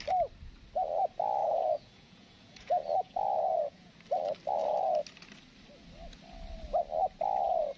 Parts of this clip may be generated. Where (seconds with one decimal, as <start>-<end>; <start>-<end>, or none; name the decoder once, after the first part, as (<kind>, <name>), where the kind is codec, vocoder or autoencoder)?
1.4-3.9 (vocoder, Vocos)